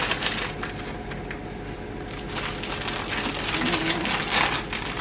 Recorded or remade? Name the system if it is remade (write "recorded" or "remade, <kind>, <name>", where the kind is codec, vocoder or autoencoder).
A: recorded